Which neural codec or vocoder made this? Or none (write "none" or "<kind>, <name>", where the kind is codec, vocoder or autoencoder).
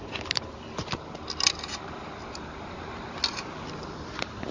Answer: none